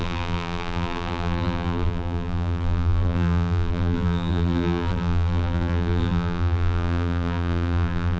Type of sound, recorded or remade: remade